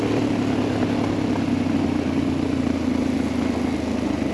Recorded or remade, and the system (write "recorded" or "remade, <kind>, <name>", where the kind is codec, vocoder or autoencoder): recorded